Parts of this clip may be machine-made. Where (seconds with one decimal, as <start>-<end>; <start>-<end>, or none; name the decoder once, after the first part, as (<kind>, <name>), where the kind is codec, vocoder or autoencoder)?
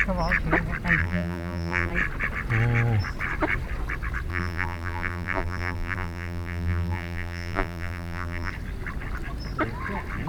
1.0-1.9 (vocoder, BigVGAN v2); 4.3-8.5